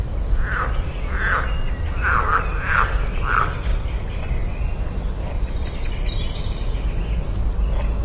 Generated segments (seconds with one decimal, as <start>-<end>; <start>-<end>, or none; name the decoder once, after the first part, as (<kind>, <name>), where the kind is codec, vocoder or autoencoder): 3.7-6.4 (vocoder, BigVGAN v2)